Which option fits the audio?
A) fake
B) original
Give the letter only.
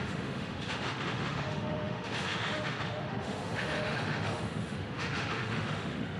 A